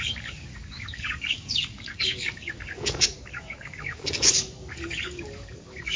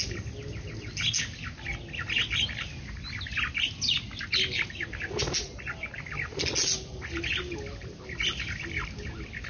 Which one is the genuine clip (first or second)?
second